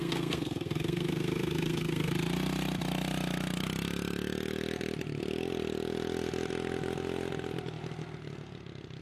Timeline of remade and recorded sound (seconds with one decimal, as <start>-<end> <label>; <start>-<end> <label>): 0.0-2.1 remade; 2.1-9.0 recorded